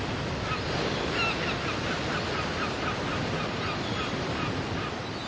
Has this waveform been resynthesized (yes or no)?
no